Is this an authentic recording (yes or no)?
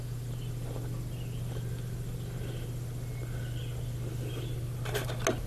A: yes